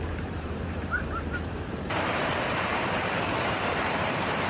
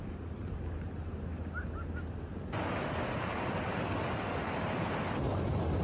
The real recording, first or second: second